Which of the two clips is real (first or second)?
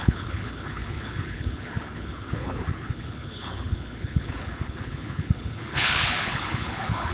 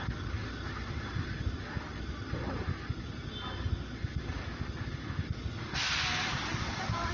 second